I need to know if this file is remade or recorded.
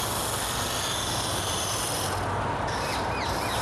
recorded